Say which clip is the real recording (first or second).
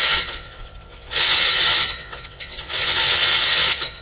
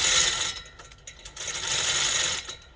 second